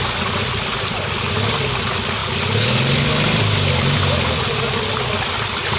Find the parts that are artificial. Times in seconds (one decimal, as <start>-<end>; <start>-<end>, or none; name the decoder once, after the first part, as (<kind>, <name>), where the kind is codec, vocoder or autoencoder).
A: none